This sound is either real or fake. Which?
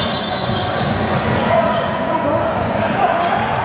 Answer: fake